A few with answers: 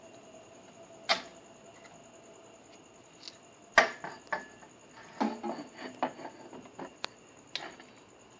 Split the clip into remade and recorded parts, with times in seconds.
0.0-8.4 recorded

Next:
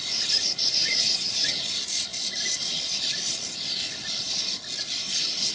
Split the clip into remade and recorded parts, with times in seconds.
0.0-0.8 recorded; 0.8-1.5 remade; 1.5-5.5 recorded